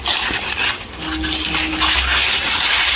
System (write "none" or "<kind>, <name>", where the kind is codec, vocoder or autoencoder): none